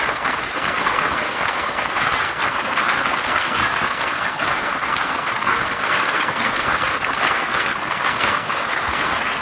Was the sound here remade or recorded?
remade